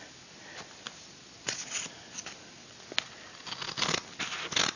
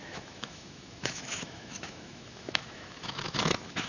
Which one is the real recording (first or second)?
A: first